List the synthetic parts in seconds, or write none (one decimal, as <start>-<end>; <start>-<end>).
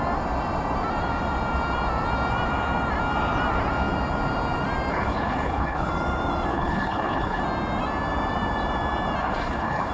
4.9-5.9; 6.5-7.4; 9.2-9.9